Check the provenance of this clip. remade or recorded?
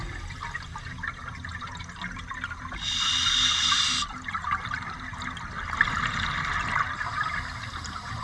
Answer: recorded